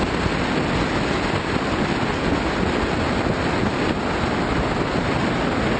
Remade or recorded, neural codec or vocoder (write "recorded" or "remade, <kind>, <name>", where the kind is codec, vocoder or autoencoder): recorded